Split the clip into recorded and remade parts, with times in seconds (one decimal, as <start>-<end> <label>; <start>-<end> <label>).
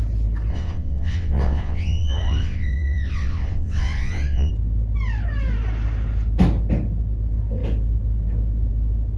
0.0-0.5 recorded; 0.5-4.5 remade; 4.5-9.2 recorded